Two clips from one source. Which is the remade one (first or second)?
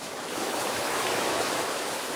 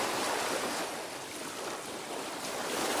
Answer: first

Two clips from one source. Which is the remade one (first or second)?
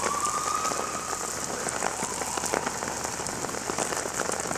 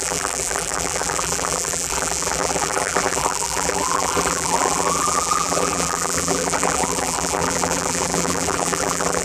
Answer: second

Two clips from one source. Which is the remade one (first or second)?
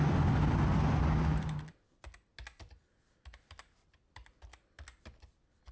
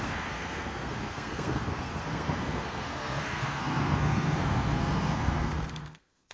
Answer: second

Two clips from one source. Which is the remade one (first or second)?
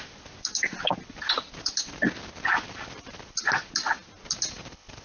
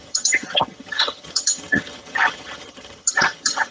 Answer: second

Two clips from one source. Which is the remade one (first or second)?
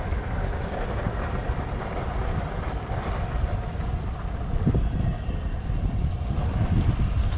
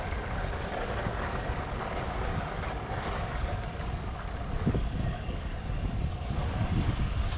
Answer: second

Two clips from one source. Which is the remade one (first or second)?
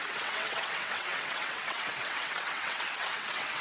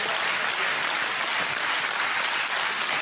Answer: first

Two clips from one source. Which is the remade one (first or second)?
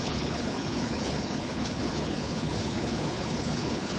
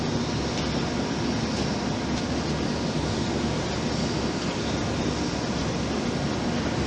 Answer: first